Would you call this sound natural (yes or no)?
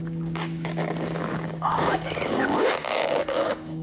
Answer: no